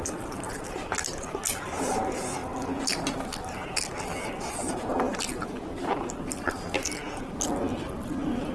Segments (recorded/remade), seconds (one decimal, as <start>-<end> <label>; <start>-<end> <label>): 0.0-8.5 recorded